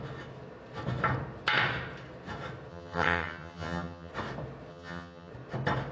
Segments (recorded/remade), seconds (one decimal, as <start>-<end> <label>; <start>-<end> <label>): 0.0-2.7 recorded; 2.7-4.1 remade; 4.1-4.7 recorded; 4.7-5.3 remade; 5.3-5.9 recorded